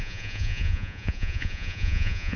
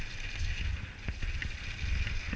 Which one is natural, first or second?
second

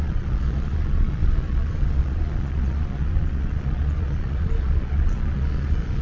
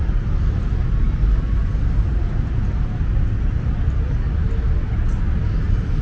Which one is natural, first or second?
second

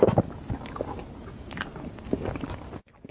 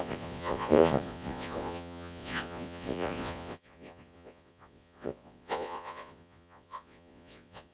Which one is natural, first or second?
first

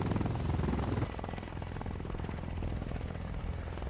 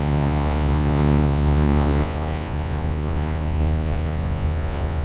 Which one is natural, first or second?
first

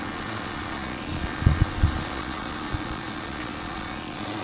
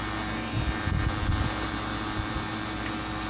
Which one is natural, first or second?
second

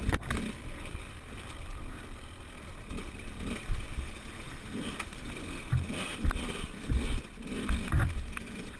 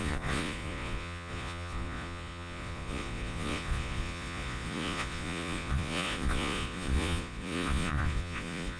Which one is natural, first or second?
first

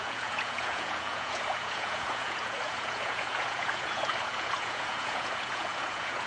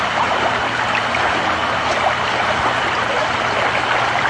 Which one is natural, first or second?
second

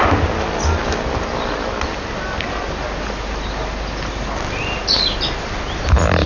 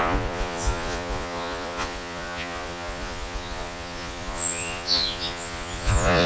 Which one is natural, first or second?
first